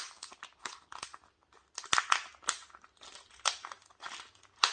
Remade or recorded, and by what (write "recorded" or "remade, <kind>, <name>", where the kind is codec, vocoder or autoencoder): recorded